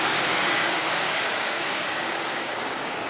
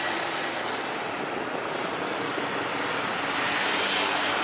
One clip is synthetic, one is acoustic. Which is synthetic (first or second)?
first